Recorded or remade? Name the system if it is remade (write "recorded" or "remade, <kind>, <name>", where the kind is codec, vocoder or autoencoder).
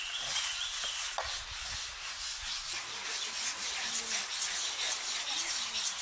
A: recorded